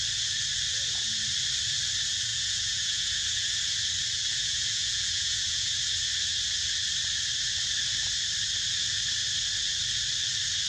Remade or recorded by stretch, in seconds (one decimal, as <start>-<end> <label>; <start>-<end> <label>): 0.0-2.3 recorded; 2.3-3.5 remade; 3.5-4.4 recorded; 4.4-5.8 remade; 5.8-10.7 recorded